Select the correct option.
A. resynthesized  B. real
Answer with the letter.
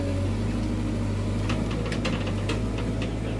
B